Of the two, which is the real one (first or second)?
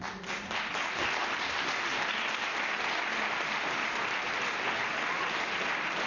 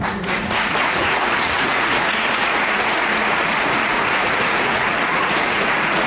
first